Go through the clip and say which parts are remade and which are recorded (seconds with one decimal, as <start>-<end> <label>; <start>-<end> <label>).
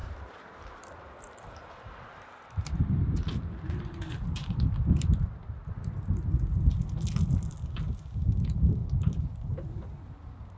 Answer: 0.0-2.8 remade; 2.8-4.4 recorded; 4.4-5.3 remade; 5.3-8.8 recorded; 8.8-9.8 remade; 9.8-10.6 recorded